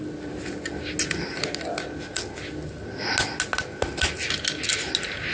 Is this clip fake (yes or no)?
no